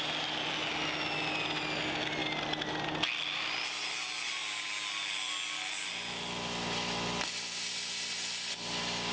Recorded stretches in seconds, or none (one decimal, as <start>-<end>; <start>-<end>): 0.0-9.1